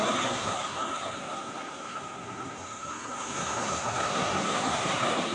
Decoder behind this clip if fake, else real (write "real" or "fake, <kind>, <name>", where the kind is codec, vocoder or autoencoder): fake, codec, SNAC